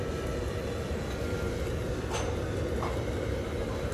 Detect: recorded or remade recorded